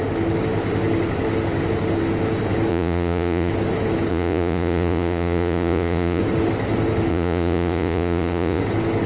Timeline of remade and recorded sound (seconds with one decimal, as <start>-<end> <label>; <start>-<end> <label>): 0.0-2.7 recorded; 2.7-3.5 remade; 3.5-4.1 recorded; 4.1-6.2 remade; 6.2-7.1 recorded; 7.1-8.6 remade; 8.6-9.1 recorded